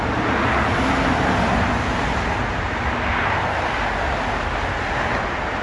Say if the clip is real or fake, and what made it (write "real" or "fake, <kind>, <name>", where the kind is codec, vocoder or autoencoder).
real